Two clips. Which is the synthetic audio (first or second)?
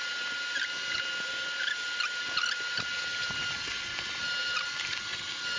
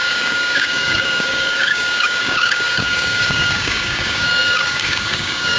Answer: second